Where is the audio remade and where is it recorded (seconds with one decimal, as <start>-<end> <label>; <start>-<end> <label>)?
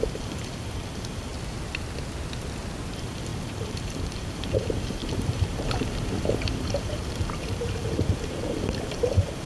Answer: 0.0-1.3 remade; 1.3-2.9 recorded; 2.9-9.5 remade